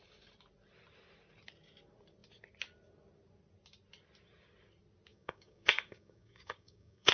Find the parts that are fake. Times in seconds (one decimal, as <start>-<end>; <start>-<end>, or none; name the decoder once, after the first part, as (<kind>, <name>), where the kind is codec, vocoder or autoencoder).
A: 5.1-7.1 (codec, DAC)